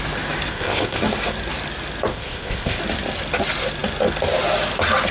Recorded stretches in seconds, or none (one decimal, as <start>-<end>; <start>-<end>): 0.0-0.5; 1.0-2.1; 2.8-5.1